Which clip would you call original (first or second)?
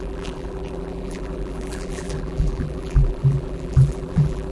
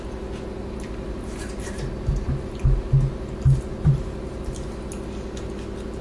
second